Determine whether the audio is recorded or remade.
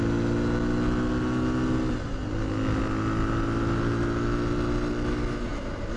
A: recorded